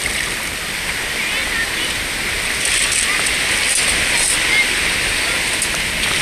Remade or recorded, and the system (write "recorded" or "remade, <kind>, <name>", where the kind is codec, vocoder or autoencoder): recorded